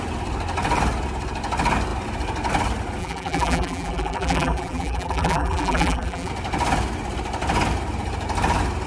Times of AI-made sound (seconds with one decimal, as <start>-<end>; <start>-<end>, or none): 3.0-6.3